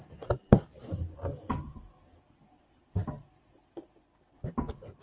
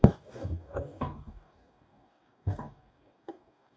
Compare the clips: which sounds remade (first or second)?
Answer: second